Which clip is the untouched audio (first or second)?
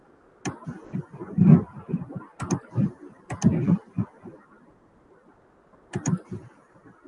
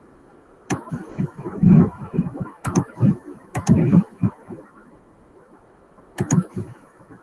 first